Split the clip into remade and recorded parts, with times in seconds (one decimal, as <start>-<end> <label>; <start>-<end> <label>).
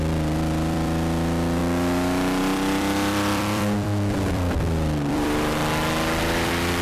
0.0-1.6 remade; 1.6-2.4 recorded; 2.4-5.6 remade; 5.6-6.2 recorded; 6.2-6.8 remade